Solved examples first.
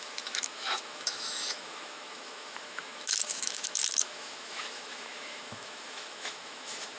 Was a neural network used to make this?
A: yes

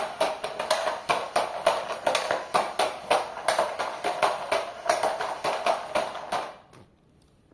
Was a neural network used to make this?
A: no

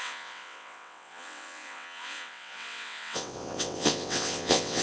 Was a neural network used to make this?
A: yes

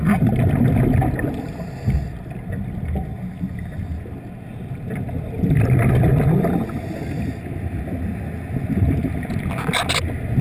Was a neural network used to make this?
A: no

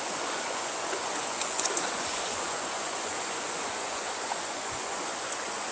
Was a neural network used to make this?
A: yes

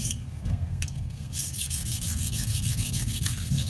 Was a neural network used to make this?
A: yes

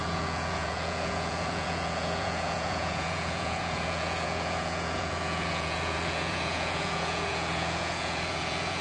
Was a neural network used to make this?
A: yes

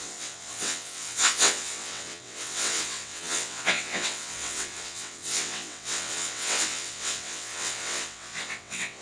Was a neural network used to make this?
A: yes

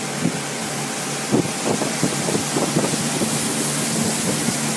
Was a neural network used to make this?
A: no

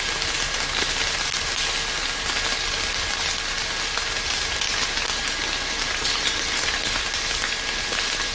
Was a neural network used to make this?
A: no